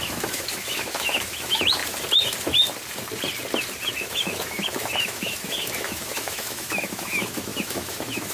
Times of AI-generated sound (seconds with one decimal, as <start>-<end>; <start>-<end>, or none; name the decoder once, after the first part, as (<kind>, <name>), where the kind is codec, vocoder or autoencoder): 0.0-1.8 (autoencoder, DAC-VAE); 3.9-8.3